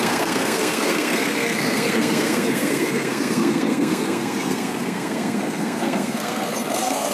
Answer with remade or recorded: remade